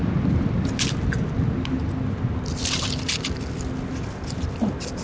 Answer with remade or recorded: recorded